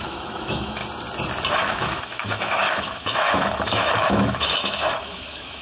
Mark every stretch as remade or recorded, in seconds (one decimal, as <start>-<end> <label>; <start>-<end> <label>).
0.0-0.8 remade; 0.8-1.5 recorded; 1.5-5.6 remade